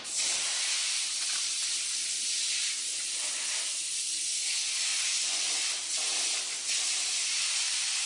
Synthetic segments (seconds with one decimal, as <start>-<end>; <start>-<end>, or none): 4.9-5.4